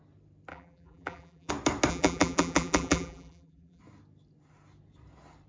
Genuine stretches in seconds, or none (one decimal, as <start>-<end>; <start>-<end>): 0.0-0.5; 1.5-1.9; 3.8-5.5